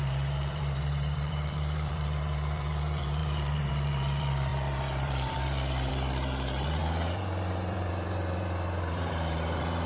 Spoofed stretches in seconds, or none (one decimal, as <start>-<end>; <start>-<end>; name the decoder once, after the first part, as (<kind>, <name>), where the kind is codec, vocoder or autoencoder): 0.0-9.9 (vocoder, BigVGAN v2)

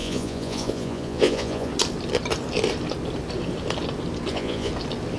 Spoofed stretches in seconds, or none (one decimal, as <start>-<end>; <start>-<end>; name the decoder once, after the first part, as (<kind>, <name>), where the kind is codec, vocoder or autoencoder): 0.0-1.7 (vocoder, Vocos); 4.3-4.7

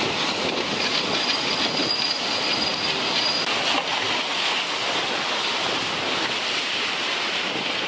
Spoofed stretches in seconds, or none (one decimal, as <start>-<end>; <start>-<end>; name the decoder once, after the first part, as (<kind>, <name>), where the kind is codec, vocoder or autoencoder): none